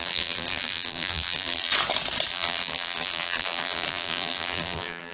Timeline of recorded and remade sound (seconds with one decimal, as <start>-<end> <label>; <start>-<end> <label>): 0.0-1.7 remade; 1.7-2.3 recorded; 2.3-5.1 remade